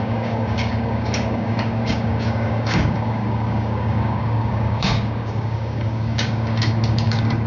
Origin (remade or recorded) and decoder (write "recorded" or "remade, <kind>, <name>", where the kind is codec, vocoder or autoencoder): remade, codec, DAC